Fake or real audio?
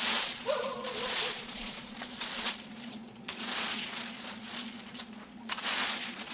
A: fake